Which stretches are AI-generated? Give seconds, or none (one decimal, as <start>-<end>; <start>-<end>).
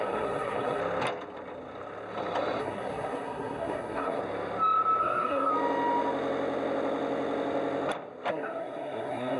0.0-0.8; 2.6-4.2; 5.0-5.5; 8.3-9.4